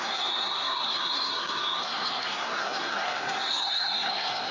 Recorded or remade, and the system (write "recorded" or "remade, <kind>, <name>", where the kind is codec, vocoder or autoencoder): remade, codec, SNAC